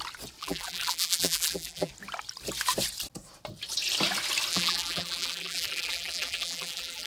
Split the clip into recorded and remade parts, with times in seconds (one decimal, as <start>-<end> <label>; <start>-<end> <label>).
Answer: 0.0-0.4 recorded; 0.4-1.9 remade; 1.9-4.5 recorded; 4.5-7.1 remade